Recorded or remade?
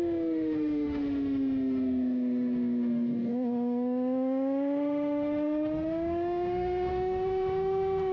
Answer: remade